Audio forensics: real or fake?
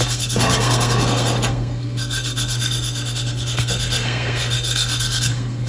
fake